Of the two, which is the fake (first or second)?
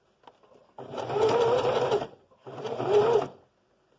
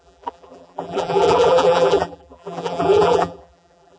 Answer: second